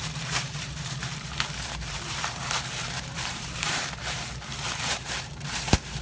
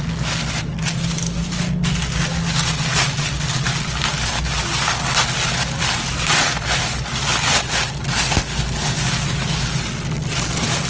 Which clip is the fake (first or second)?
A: first